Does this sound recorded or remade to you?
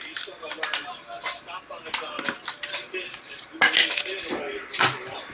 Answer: recorded